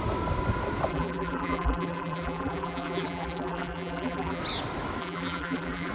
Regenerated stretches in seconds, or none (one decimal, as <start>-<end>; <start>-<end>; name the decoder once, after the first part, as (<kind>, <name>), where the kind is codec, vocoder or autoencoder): 0.9-4.4 (vocoder, BigVGAN v2); 5.0-5.9